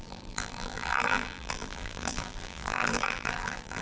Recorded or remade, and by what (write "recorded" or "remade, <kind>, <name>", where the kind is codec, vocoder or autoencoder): remade, vocoder, BigVGAN v2